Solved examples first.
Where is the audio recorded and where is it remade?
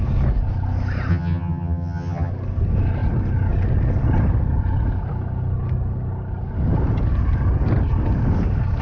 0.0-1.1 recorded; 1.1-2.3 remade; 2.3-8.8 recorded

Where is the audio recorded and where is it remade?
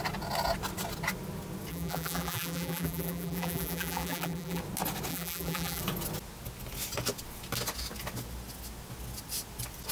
0.0-1.7 recorded; 1.7-4.6 remade; 4.6-5.1 recorded; 5.1-5.8 remade; 5.8-9.9 recorded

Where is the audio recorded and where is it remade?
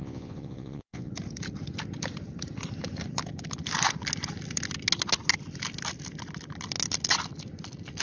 0.0-1.1 remade; 1.1-8.0 recorded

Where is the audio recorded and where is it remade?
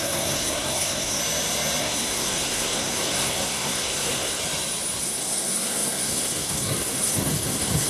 0.0-1.2 remade; 1.2-1.8 recorded; 1.8-4.4 remade; 4.4-5.0 recorded; 5.0-7.9 remade